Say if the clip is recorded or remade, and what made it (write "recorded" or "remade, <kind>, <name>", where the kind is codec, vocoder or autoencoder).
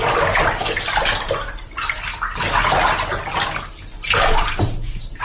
recorded